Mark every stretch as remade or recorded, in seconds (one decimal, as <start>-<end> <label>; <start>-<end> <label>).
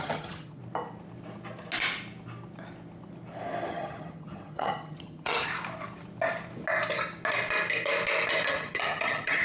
0.0-0.6 remade; 0.6-3.7 recorded; 3.7-5.5 remade; 5.5-8.5 recorded; 8.5-9.4 remade